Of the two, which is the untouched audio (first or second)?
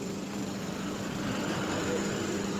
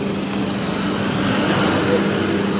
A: second